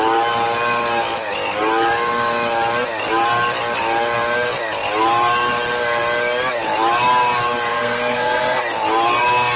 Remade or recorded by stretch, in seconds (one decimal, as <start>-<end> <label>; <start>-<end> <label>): 0.0-7.7 recorded; 7.7-8.6 remade; 8.6-9.6 recorded